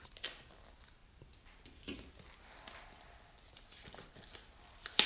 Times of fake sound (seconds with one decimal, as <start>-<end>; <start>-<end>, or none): none